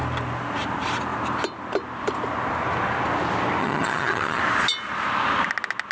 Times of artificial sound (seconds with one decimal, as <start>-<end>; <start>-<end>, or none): 3.6-4.4